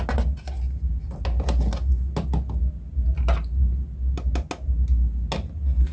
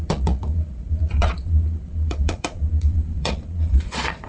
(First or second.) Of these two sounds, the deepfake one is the second